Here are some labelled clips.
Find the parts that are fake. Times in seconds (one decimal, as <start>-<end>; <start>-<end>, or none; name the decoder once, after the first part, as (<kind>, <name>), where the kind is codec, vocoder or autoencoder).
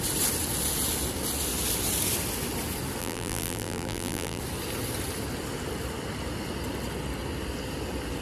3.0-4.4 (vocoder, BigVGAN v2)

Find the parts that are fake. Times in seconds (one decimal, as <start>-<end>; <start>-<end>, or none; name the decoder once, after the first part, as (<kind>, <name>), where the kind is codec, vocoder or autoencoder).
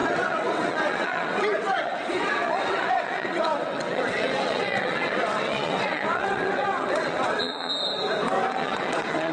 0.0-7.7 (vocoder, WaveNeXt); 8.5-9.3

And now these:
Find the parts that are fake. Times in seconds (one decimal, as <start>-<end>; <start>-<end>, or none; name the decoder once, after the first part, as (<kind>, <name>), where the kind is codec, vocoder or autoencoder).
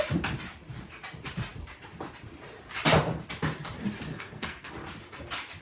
4.1-4.7 (codec, SNAC)